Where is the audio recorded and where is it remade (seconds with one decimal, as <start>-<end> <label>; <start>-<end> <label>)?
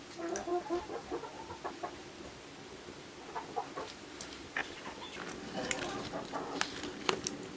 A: 0.0-7.6 recorded